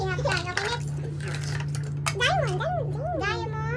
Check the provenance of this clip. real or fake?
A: real